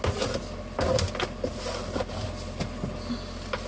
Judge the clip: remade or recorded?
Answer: recorded